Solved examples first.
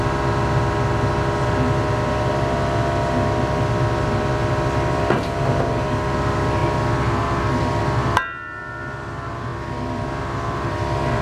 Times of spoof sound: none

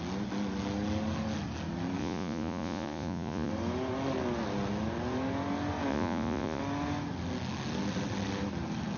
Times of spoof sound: 2.0-3.5 (vocoder, Vocos); 5.9-6.6

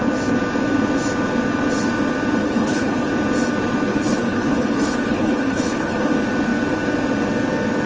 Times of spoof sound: 2.4-3.1 (codec, HILCodec); 3.9-6.1

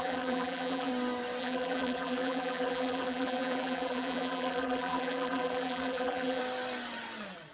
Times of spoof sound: 0.0-0.9 (vocoder, BigVGAN v2); 1.4-6.4